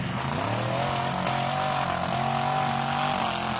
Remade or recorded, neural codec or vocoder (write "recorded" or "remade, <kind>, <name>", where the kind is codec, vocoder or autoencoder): recorded